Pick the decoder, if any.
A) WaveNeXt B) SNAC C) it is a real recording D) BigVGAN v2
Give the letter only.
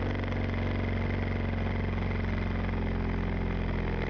C